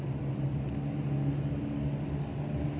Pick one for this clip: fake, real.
real